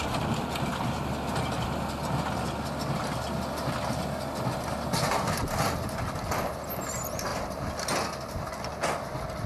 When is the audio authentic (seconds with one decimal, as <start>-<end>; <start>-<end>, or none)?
0.0-9.5